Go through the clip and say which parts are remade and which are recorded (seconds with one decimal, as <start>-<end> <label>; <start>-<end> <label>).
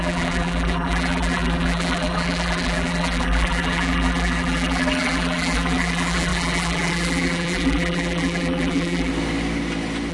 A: 0.0-9.1 remade; 9.1-10.1 recorded